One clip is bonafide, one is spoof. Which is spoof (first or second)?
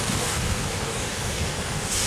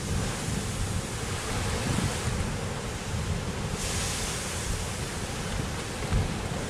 first